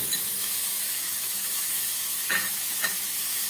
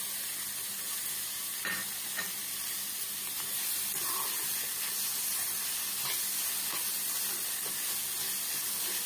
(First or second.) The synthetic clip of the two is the first